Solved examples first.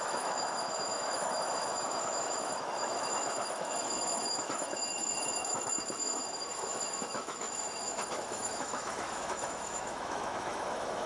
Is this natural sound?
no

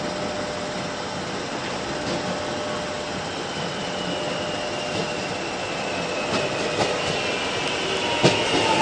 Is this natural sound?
yes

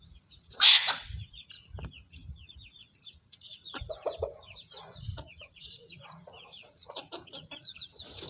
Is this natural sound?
no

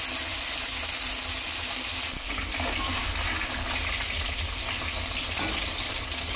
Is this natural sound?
yes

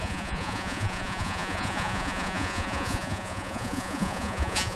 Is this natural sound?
no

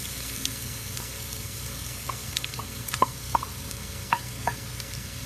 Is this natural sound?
no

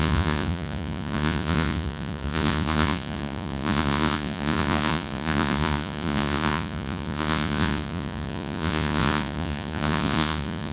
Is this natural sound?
no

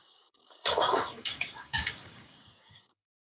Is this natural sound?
no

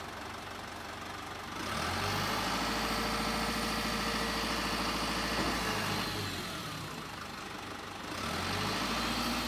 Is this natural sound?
yes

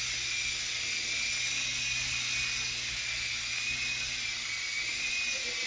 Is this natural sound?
yes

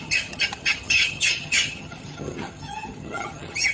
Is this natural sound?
no